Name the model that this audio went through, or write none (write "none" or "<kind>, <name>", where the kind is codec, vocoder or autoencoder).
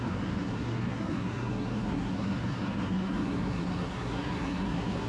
codec, SNAC